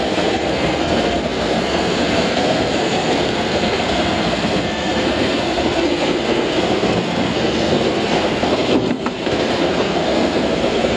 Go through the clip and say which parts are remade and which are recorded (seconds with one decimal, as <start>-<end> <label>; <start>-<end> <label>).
0.0-11.0 remade